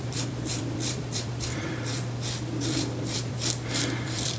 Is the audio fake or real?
fake